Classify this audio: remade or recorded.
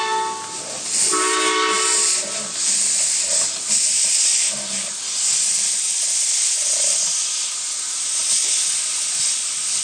recorded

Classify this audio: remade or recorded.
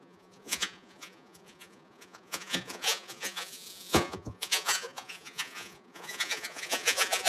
remade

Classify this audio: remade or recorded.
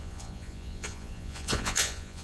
remade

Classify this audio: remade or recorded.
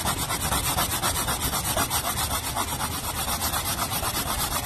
recorded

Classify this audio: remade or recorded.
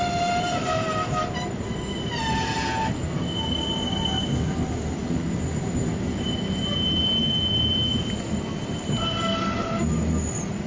recorded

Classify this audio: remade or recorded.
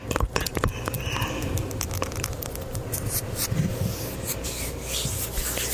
recorded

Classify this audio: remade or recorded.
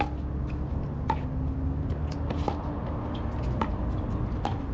recorded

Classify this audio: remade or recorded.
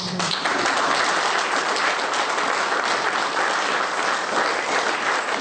recorded